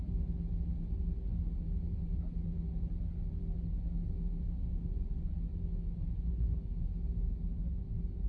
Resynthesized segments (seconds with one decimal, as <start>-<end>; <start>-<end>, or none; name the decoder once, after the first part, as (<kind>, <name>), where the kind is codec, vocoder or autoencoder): 4.7-5.3 (vocoder, Vocos)